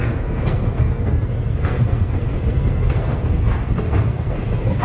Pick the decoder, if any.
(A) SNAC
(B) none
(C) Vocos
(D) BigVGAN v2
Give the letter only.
A